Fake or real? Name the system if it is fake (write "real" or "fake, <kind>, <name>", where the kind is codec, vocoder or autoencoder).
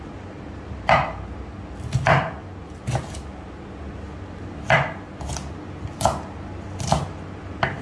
real